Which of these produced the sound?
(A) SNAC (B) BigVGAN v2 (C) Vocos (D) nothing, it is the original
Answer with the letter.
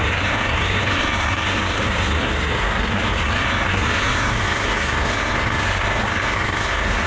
A